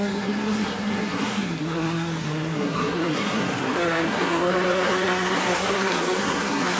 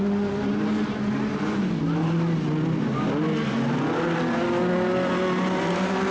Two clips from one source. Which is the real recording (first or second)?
second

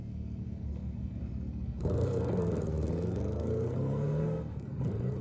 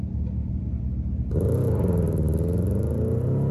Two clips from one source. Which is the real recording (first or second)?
second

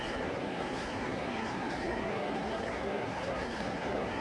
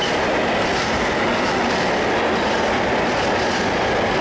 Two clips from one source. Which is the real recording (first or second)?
second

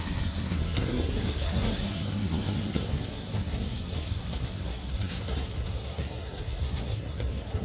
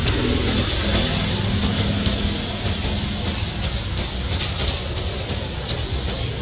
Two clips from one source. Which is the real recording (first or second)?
second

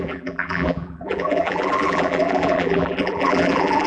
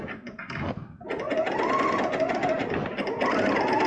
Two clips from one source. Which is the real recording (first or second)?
second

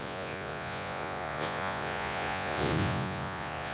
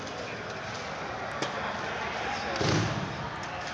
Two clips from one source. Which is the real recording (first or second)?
second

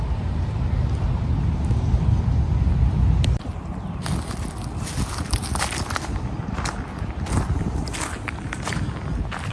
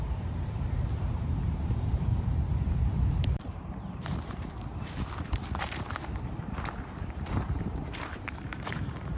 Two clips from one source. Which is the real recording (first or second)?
first